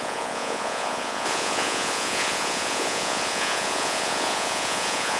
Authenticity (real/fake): fake